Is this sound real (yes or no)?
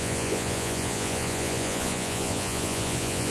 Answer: no